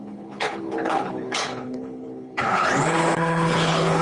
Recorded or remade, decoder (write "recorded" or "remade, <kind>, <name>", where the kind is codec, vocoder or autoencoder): remade, codec, HILCodec